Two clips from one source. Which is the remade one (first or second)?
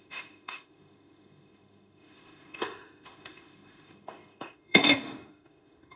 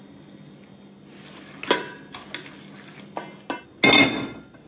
first